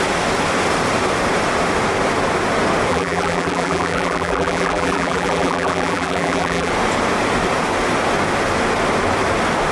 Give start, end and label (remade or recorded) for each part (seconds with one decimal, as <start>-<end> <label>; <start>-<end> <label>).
0.0-2.9 recorded; 2.9-6.7 remade; 6.7-9.7 recorded